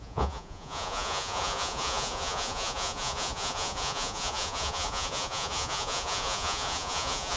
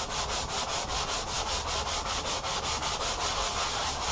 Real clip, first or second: second